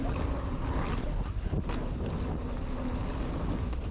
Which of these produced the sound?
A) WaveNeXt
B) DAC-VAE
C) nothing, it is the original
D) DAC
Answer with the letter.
C